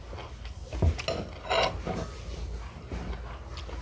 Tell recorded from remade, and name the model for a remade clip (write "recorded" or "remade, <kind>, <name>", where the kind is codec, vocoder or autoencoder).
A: recorded